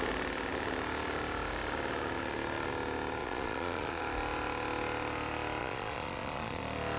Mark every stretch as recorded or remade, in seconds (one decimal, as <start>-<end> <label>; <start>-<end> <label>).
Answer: 0.0-3.2 recorded; 3.2-4.0 remade; 4.0-5.6 recorded; 5.6-6.6 remade; 6.6-7.0 recorded